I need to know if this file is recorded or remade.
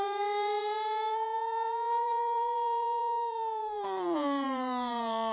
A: remade